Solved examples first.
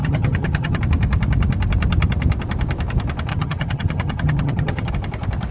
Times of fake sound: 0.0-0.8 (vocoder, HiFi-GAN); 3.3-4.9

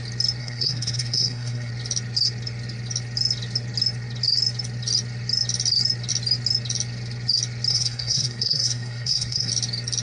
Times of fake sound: 0.4-1.7 (codec, SNAC); 7.7-9.5

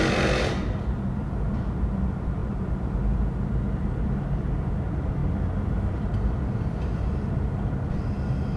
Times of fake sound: none

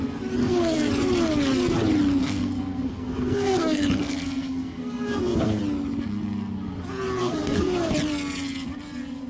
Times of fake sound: 0.4-0.9 (codec, SNAC); 2.2-5.6; 7.2-7.9

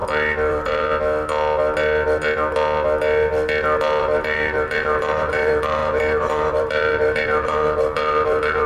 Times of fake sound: 0.5-0.9 (vocoder, BigVGAN v2); 4.0-8.7